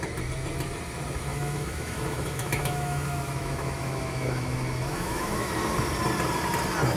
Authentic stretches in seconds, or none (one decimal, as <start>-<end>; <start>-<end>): 0.0-1.3; 5.5-7.0